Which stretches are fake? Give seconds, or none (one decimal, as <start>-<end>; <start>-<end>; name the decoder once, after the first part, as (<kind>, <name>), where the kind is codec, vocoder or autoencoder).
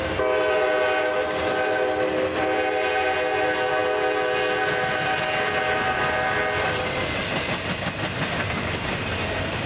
none